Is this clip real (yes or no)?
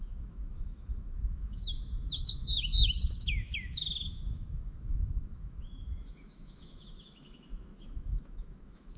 no